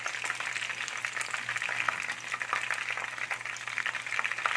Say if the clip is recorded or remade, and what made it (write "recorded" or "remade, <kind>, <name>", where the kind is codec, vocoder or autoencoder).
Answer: recorded